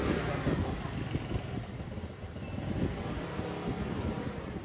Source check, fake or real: real